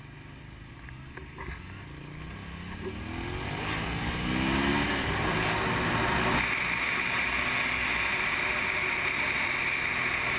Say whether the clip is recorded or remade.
recorded